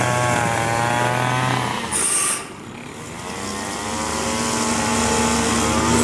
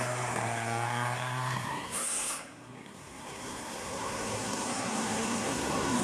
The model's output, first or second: second